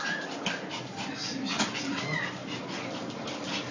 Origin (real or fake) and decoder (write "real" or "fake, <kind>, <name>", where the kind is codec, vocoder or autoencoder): real